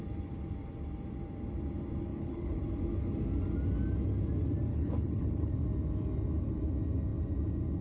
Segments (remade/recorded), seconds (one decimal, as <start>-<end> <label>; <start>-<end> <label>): 0.0-2.1 recorded; 2.1-2.6 remade; 2.6-4.7 recorded; 4.7-5.5 remade; 5.5-7.8 recorded

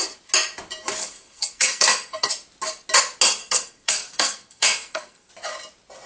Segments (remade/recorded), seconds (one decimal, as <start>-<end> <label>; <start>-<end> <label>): 0.0-1.0 recorded; 1.0-2.3 remade; 2.3-3.4 recorded; 3.4-5.3 remade; 5.3-6.1 recorded

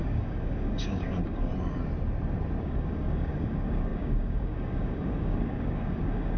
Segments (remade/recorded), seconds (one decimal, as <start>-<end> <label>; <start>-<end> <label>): 0.0-1.5 remade; 1.5-2.6 recorded; 2.6-6.4 remade

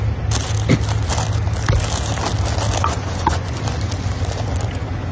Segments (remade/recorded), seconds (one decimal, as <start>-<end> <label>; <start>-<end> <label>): 0.0-2.8 recorded; 2.8-3.6 remade; 3.6-5.1 recorded

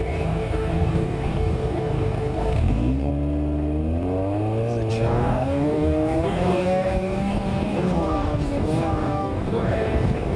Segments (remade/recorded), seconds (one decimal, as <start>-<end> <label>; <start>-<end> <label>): 0.0-3.1 remade; 3.1-4.9 recorded; 4.9-10.4 remade

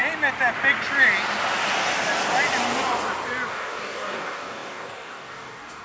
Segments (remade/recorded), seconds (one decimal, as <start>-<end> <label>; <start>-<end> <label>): 0.0-3.5 recorded; 3.5-5.8 remade

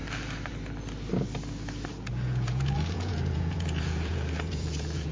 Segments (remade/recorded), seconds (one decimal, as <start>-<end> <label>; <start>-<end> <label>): 0.0-2.1 recorded; 2.1-5.1 remade